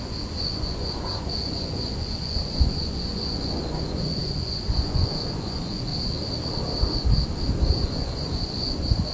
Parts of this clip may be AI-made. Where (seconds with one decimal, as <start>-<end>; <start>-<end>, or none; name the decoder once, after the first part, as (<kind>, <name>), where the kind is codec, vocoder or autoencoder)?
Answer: 0.0-5.9 (vocoder, Vocos); 7.6-9.1